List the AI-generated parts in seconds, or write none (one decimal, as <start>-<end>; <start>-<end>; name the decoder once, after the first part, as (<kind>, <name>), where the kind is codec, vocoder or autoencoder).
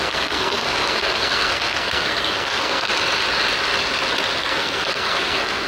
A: 0.0-2.9 (codec, SNAC); 4.4-5.7